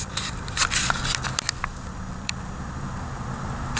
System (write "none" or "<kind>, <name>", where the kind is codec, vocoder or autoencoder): vocoder, BigVGAN v2